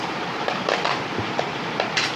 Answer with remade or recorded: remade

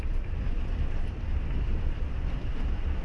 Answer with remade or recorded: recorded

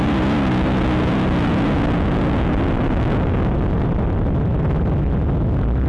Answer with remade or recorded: recorded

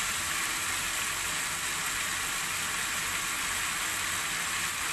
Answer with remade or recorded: recorded